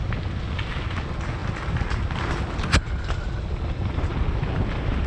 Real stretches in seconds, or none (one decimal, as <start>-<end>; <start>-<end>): 0.0-5.1